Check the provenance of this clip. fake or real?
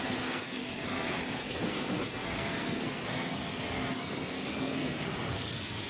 fake